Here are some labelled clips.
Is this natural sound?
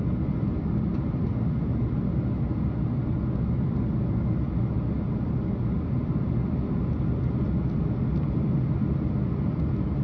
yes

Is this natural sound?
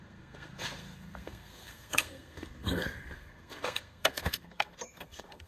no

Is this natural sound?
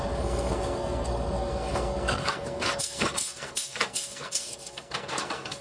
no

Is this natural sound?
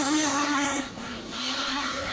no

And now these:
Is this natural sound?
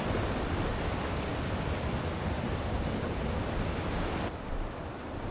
yes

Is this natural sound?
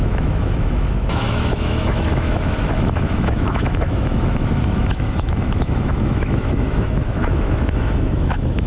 no